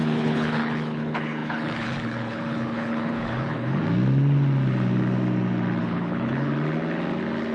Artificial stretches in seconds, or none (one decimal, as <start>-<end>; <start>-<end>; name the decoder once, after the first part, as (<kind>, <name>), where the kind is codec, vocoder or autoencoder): 0.0-3.8 (codec, HILCodec); 5.8-6.5

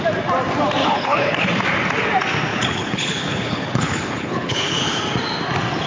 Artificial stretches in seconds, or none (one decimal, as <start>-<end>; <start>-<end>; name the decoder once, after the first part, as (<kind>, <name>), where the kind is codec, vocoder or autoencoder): 0.8-1.5 (codec, HILCodec); 2.5-5.0

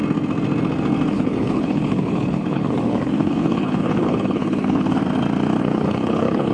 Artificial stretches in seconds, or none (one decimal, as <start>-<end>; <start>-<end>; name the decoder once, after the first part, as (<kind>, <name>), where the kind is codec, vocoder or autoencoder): 1.1-5.0 (codec, HILCodec); 5.6-6.5

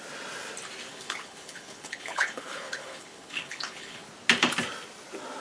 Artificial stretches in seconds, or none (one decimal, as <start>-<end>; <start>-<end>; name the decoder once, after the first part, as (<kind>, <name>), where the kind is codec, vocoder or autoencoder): 0.9-4.1 (codec, HILCodec)

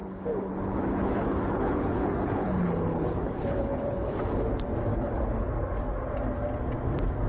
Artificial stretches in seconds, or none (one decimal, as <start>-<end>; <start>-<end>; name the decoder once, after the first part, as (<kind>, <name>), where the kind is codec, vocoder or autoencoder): 0.0-4.4 (codec, HILCodec); 4.9-5.5

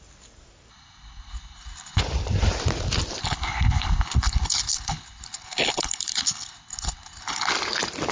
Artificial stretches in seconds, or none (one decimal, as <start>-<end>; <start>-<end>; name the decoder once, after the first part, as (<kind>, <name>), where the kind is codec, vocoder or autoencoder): 0.7-2.0 (codec, HILCodec); 3.2-7.5